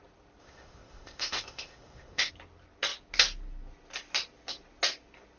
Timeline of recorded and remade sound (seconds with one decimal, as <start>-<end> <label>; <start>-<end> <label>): 0.0-0.4 recorded; 0.4-2.3 remade; 2.3-5.4 recorded